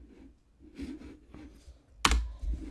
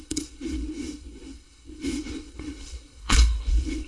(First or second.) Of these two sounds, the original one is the first